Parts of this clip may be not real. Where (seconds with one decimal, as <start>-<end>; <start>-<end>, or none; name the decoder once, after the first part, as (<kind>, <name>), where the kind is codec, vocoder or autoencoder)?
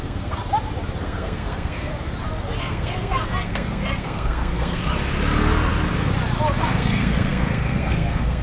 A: 0.0-0.4 (codec, SNAC); 1.0-1.9; 2.6-4.8; 6.6-8.4